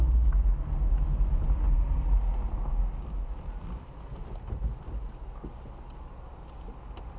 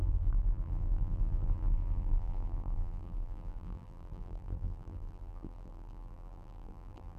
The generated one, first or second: second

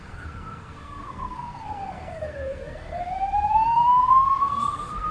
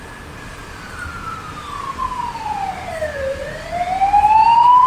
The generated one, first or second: first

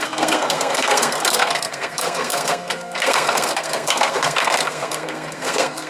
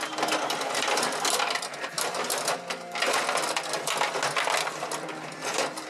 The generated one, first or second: first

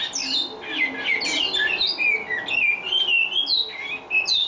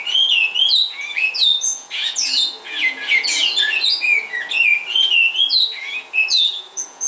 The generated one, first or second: second